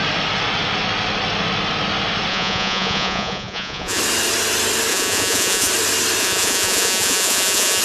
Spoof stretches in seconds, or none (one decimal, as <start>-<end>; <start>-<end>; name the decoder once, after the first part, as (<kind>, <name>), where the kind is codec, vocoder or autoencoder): 2.3-4.0 (vocoder, Vocos); 4.9-5.7; 6.2-7.8